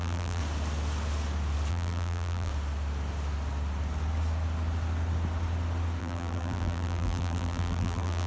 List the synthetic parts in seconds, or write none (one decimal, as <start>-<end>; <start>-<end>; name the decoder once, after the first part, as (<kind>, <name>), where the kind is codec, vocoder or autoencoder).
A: 0.0-0.4 (vocoder, BigVGAN v2); 1.7-2.5; 6.0-8.3